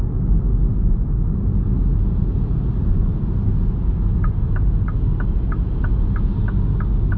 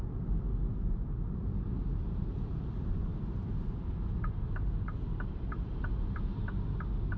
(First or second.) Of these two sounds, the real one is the first